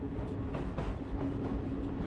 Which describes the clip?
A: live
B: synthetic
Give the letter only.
A